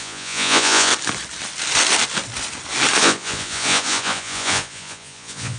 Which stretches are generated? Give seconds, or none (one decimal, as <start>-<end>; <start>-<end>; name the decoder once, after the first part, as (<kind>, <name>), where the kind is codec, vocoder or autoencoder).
0.0-0.9 (vocoder, Vocos); 3.0-5.6

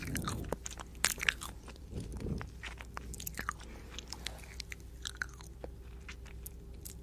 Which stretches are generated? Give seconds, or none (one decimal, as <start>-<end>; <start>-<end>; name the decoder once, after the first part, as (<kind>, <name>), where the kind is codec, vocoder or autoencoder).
0.0-0.9 (vocoder, BigVGAN v2); 1.6-2.1; 6.3-7.0

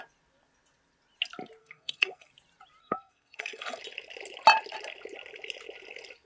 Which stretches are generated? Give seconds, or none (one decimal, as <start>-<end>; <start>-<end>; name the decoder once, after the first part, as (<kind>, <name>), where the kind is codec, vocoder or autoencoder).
1.6-2.3 (codec, SNAC); 2.8-3.8

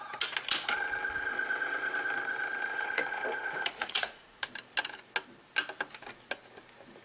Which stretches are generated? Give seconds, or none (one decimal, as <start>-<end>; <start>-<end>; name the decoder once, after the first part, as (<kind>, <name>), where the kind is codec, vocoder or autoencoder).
1.3-1.9 (vocoder, Vocos); 2.7-4.4

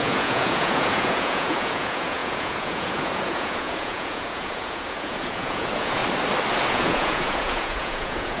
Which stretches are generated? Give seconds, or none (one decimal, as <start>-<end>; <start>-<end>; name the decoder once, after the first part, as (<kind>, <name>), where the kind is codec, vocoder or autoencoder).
0.0-6.0 (vocoder, Vocos); 6.7-8.4

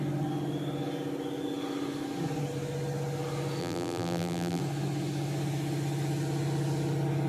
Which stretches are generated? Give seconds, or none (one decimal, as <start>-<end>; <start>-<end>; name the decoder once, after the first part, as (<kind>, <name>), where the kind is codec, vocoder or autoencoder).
3.6-4.6 (vocoder, BigVGAN v2)

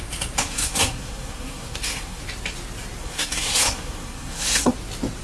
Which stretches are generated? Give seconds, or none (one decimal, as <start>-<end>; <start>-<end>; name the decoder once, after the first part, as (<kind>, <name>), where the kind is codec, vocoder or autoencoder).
0.4-2.2 (codec, SNAC); 3.0-4.7